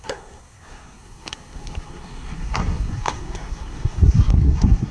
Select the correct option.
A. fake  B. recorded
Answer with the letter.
A